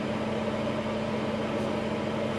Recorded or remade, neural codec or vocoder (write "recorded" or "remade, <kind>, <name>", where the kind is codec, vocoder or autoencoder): remade, vocoder, BigVGAN v2